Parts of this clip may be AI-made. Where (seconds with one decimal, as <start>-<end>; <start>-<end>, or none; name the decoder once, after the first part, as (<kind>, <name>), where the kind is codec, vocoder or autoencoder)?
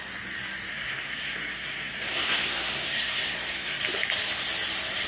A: 0.7-3.8 (codec, SNAC)